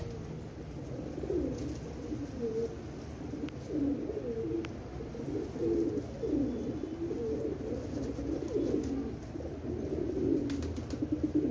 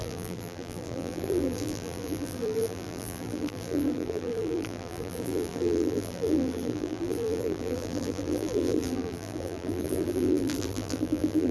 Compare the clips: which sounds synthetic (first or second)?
second